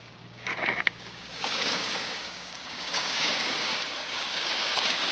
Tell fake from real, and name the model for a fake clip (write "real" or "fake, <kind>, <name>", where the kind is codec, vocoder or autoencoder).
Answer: fake, codec, DAC